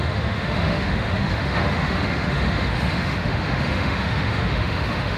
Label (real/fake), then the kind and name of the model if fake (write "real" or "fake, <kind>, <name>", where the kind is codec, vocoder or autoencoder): fake, autoencoder, DAC-VAE